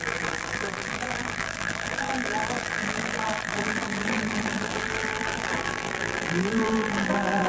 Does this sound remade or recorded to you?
remade